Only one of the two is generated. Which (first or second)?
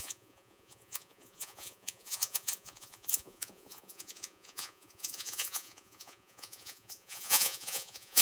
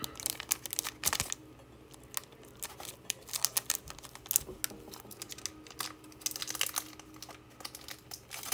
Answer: first